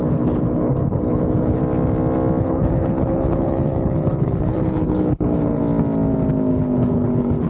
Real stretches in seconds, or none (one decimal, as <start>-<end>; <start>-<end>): 1.6-2.4; 5.6-6.5